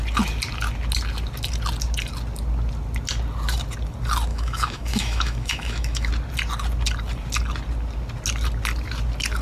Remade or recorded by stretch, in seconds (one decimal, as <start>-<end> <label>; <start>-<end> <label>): 0.0-4.3 recorded; 4.3-6.1 remade; 6.1-9.4 recorded